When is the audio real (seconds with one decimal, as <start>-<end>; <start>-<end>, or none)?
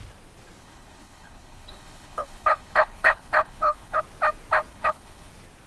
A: 0.0-0.6; 4.0-4.7; 5.3-5.7